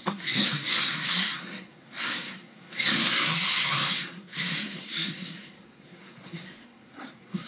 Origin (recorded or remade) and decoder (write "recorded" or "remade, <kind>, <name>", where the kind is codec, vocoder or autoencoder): remade, codec, SNAC